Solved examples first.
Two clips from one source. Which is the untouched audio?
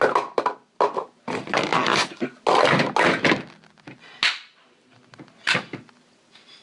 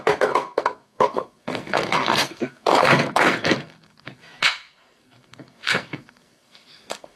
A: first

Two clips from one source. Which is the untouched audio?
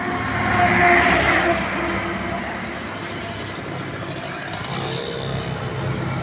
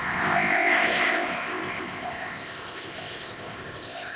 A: first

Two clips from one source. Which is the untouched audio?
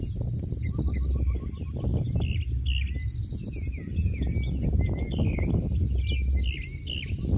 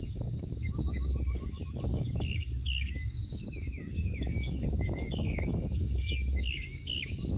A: first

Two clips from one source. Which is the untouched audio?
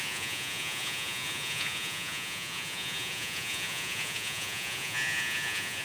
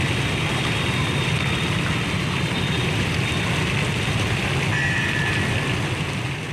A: second